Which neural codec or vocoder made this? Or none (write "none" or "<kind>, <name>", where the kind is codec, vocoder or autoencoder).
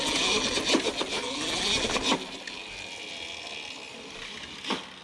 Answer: none